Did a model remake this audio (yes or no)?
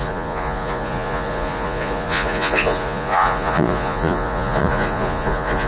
yes